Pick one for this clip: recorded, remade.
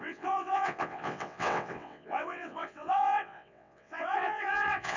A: remade